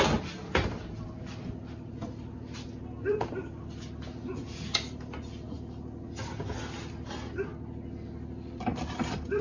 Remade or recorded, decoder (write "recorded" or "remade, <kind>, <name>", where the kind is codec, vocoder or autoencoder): recorded